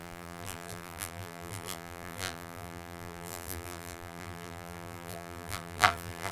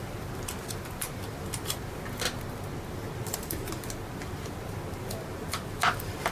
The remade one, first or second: first